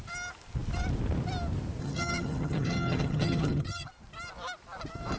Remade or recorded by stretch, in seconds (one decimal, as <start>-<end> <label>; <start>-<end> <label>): 0.0-1.8 recorded; 1.8-3.9 remade; 3.9-5.2 recorded